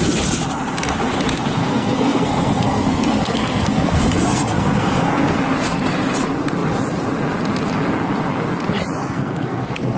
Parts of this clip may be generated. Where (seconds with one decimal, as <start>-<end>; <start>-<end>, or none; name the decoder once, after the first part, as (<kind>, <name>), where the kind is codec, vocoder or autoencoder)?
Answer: 1.6-5.4 (codec, SNAC); 9.0-10.0